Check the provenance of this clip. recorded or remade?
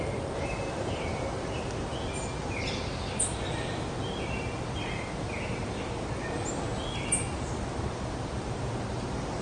recorded